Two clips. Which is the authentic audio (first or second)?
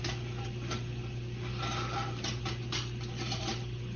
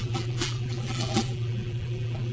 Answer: first